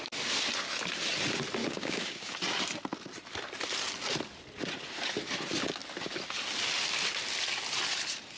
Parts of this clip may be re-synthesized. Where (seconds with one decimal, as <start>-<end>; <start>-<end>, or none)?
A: 1.6-2.3

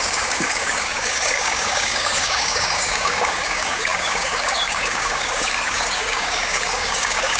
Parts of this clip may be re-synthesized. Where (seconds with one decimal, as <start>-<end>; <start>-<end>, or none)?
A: 0.0-7.4

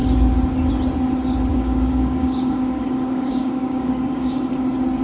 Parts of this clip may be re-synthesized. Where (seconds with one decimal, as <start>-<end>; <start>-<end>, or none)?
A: 1.5-4.5